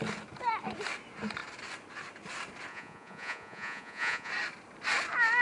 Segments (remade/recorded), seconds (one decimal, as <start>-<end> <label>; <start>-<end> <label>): 0.0-2.7 recorded; 2.7-4.3 remade; 4.3-5.4 recorded